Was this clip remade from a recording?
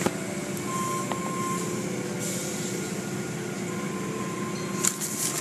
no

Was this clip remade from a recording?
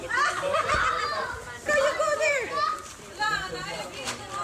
yes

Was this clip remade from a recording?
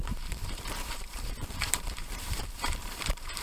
yes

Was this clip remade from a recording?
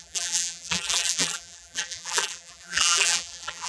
yes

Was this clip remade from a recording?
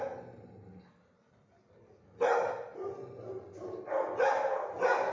no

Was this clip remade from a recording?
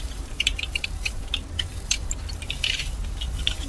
yes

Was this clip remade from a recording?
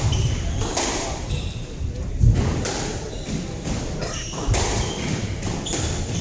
yes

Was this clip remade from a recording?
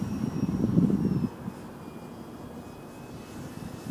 no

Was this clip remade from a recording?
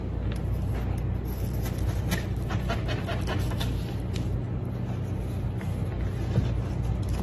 no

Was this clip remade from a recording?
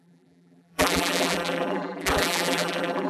yes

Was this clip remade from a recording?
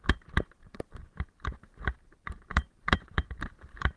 yes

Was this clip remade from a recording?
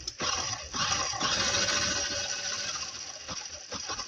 yes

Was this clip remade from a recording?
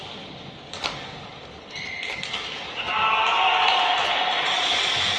no